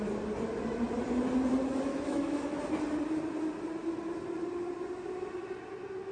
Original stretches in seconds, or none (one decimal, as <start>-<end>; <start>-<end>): 0.0-1.9; 2.6-6.1